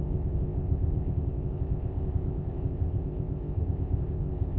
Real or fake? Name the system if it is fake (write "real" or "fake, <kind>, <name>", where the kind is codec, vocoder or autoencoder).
fake, codec, ZipCodec